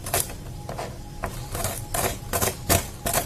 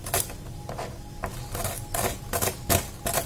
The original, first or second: second